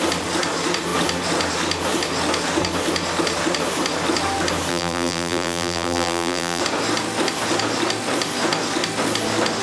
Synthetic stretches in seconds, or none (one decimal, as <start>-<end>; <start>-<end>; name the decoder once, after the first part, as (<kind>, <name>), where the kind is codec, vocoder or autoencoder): 4.7-6.6 (vocoder, BigVGAN v2)